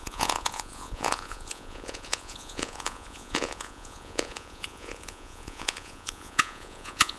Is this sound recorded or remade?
remade